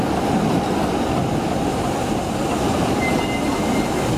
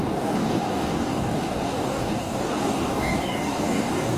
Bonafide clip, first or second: first